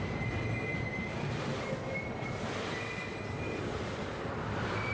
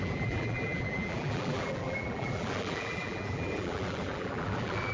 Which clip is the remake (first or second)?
second